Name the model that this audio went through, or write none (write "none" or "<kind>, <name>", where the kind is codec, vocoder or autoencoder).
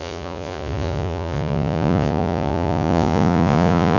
vocoder, Vocos